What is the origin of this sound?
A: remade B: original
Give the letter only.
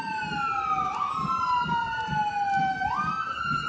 B